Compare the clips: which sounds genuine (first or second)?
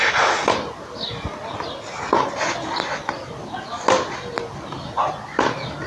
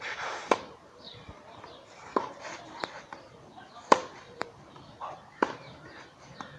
first